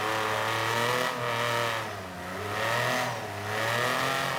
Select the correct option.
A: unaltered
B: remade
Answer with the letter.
A